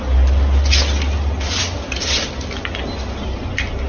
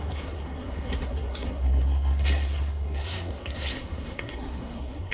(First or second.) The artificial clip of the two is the second